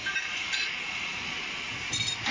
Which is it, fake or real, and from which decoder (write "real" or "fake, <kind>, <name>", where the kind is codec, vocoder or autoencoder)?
real